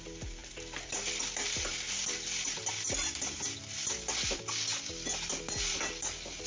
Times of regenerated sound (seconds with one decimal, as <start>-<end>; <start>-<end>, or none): 0.4-4.3